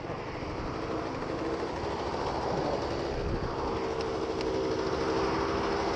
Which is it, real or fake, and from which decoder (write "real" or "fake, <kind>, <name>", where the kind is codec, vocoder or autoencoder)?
real